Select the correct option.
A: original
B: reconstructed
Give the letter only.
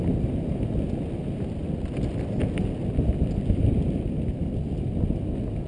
A